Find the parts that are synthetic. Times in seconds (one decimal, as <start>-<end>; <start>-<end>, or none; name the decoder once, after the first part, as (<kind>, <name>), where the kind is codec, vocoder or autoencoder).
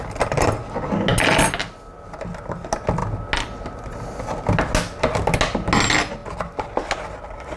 none